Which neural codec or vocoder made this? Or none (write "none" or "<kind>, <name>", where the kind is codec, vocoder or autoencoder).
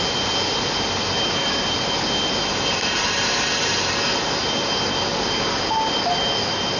none